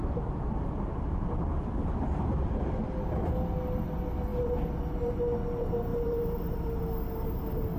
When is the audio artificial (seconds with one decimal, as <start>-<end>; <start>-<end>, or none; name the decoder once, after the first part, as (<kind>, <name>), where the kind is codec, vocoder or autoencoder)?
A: 5.9-6.8 (vocoder, BigVGAN v2)